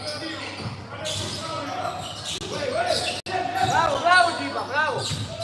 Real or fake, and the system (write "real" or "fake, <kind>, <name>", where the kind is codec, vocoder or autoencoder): real